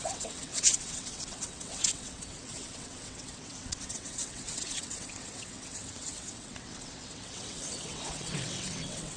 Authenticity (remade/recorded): remade